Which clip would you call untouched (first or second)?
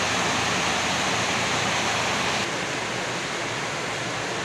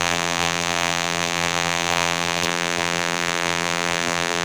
first